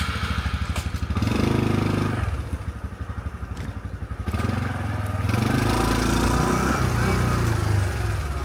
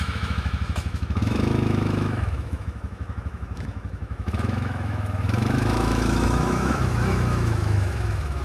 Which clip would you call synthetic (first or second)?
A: second